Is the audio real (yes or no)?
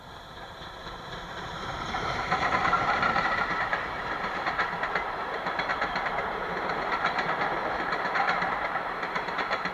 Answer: no